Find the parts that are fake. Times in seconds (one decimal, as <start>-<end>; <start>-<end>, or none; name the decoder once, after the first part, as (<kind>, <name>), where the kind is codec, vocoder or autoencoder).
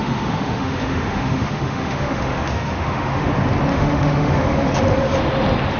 0.0-3.3 (autoencoder, DAC-VAE); 3.7-4.7